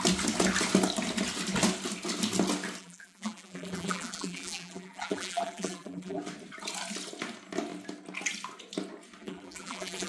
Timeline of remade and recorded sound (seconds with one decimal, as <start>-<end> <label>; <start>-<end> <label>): 0.0-2.8 recorded; 2.8-6.2 remade; 6.2-9.2 recorded; 9.2-10.1 remade